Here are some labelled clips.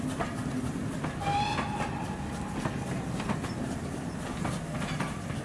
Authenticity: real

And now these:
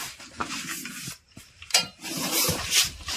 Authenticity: fake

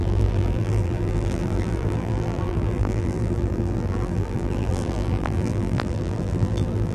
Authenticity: fake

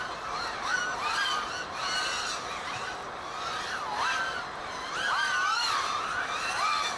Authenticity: real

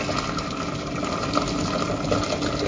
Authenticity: real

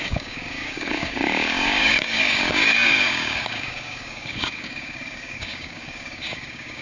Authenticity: fake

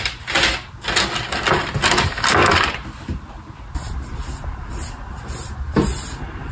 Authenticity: real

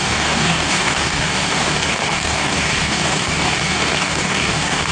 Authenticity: fake